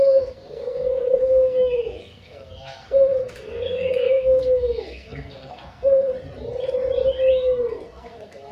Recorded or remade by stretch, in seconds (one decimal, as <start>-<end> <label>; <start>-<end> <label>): 0.0-6.1 remade; 6.1-7.3 recorded; 7.3-8.5 remade